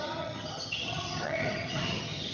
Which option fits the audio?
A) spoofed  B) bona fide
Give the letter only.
A